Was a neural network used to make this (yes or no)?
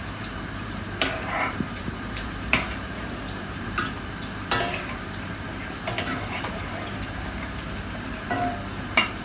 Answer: yes